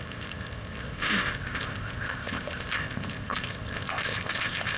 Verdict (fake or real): fake